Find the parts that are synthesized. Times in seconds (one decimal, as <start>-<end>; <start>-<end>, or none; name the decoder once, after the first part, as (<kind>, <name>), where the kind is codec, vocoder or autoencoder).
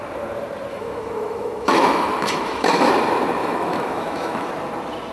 0.7-2.9 (autoencoder, DAC-VAE); 3.4-4.5